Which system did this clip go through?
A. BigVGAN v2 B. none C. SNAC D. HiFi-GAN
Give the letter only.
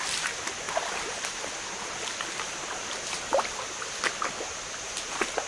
B